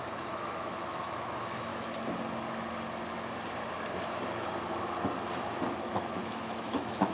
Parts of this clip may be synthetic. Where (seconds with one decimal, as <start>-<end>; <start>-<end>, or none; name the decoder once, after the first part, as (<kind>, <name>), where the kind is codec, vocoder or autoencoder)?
0.0-1.7 (autoencoder, DAC-VAE); 6.0-7.1